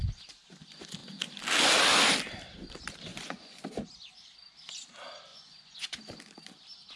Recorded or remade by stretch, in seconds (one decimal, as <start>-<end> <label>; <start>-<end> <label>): 0.0-3.1 recorded; 3.1-3.6 remade; 3.6-5.3 recorded; 5.3-6.0 remade; 6.0-7.0 recorded